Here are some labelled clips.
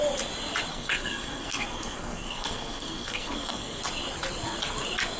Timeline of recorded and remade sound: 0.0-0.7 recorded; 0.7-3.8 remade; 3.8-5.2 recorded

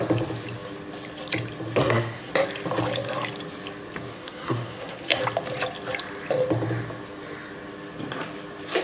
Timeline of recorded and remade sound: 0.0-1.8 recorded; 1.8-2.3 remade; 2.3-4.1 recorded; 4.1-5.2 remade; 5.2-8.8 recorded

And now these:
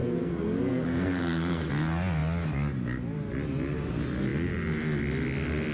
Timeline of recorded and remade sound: 0.0-1.7 remade; 1.7-5.7 recorded

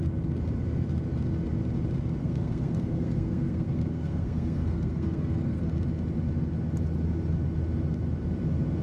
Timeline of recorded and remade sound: 0.0-2.2 recorded; 2.2-5.6 remade; 5.6-8.8 recorded

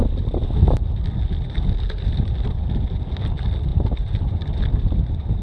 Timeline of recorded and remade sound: 0.0-5.4 recorded

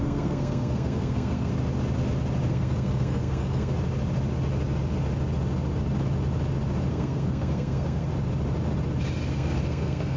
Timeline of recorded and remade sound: 0.0-1.5 remade; 1.5-2.5 recorded; 2.5-3.7 remade; 3.7-6.9 recorded; 6.9-8.1 remade; 8.1-9.3 recorded; 9.3-10.2 remade